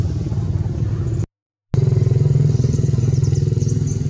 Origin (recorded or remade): recorded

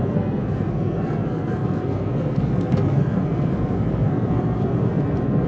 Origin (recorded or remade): remade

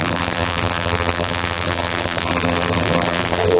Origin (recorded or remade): remade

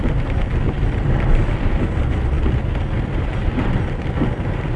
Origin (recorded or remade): recorded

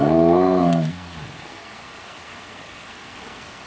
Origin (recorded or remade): remade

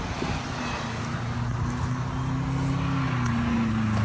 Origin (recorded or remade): recorded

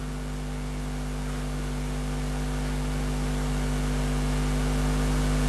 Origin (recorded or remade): recorded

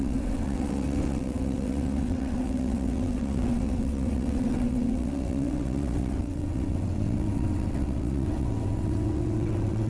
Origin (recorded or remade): remade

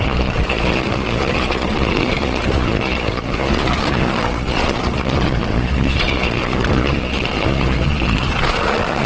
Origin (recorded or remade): remade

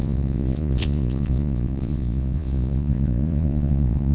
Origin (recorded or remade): remade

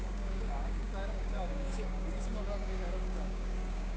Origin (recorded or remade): remade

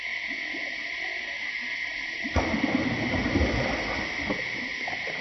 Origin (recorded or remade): recorded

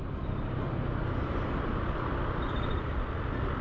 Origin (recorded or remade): recorded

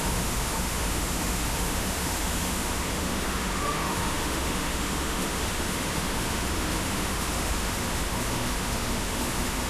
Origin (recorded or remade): remade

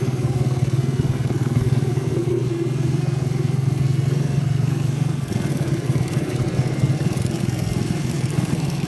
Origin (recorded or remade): remade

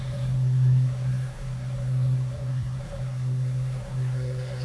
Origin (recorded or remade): remade